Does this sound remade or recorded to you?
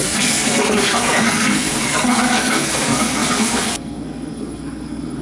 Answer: remade